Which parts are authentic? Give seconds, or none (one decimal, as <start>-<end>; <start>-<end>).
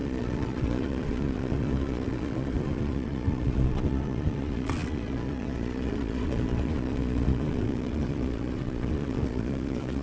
none